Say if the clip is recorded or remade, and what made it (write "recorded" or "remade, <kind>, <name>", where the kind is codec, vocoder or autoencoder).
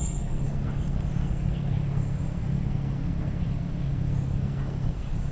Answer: remade, codec, SNAC